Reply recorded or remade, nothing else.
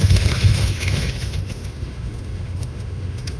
remade